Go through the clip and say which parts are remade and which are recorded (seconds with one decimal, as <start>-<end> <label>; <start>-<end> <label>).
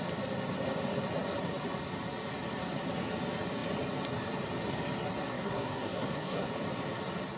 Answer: 0.0-5.3 recorded; 5.3-6.5 remade; 6.5-7.4 recorded